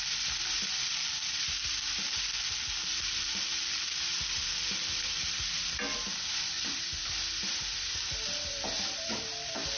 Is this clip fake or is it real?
fake